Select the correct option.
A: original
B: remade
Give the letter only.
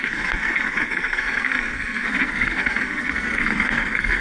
B